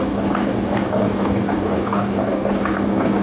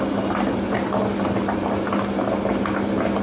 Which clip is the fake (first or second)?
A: first